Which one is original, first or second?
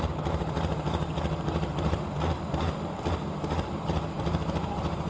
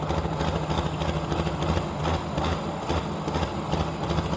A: second